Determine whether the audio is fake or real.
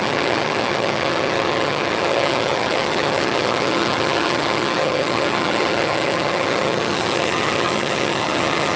fake